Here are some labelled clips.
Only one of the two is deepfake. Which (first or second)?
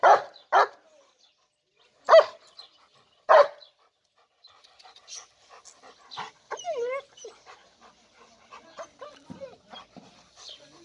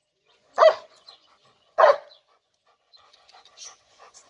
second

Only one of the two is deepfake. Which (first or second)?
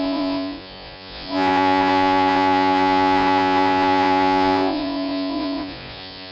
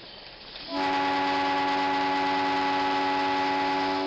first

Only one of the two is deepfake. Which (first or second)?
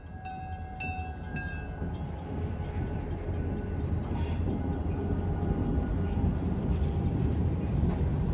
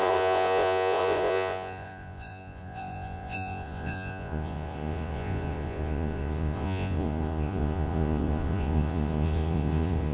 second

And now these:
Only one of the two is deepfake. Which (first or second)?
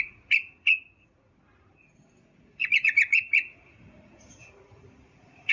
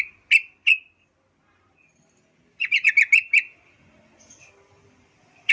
first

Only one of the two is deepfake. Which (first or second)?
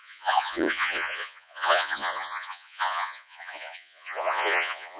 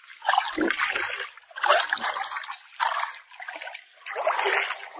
first